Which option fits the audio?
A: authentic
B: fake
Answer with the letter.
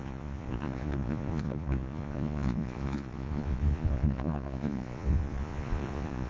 B